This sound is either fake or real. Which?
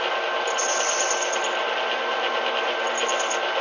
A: real